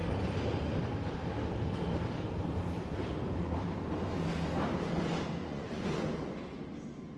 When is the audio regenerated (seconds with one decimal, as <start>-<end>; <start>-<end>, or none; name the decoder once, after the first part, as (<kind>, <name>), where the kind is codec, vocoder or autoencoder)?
5.4-6.0 (vocoder, Vocos)